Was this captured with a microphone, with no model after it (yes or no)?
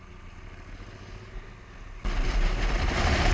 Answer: yes